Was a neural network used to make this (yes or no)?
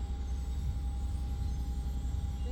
no